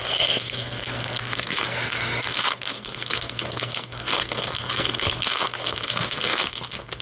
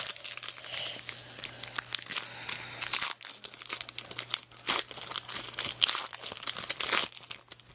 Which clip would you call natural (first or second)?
second